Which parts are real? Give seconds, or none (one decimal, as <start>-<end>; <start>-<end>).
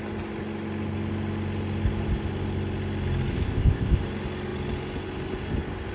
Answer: 0.0-3.3; 4.0-5.9